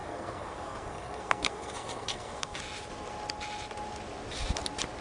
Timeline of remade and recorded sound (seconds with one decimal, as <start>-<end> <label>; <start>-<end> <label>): 0.0-2.6 remade; 2.6-5.0 recorded